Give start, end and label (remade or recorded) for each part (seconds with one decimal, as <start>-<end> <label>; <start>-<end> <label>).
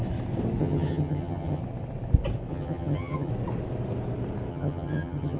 0.0-0.6 recorded; 0.6-1.6 remade; 1.6-2.5 recorded; 2.5-3.3 remade; 3.3-4.5 recorded; 4.5-5.4 remade